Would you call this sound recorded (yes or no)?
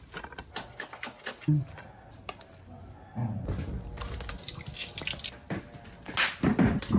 yes